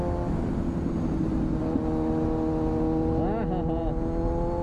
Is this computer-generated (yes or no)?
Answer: no